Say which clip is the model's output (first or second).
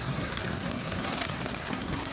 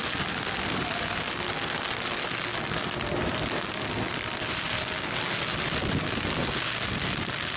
first